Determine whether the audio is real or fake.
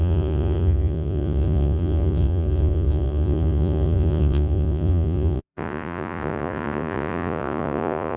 fake